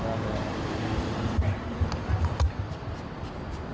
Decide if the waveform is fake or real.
real